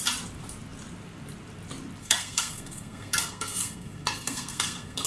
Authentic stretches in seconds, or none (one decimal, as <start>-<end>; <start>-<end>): 0.0-2.0